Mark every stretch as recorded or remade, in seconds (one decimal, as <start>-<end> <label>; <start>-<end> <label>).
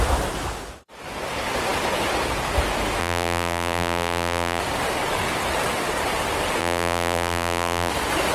0.0-3.0 recorded; 3.0-4.6 remade; 4.6-6.6 recorded; 6.6-7.9 remade; 7.9-8.3 recorded